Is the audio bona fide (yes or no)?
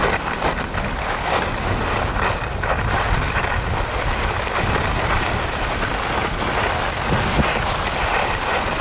yes